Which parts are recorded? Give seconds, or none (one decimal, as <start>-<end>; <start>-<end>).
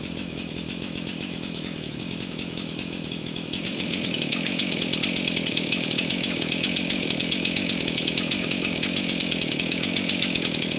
4.9-5.5